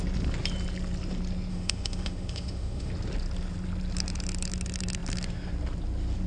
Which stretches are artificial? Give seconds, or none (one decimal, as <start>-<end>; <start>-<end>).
1.5-2.9